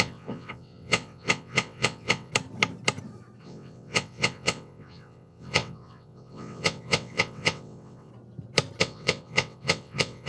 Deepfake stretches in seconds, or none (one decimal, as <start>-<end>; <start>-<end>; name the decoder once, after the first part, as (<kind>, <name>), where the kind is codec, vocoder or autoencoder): 0.0-2.3 (vocoder, WaveNeXt); 3.4-8.1; 8.8-10.3